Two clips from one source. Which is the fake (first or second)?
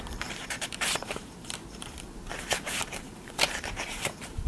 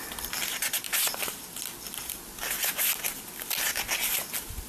first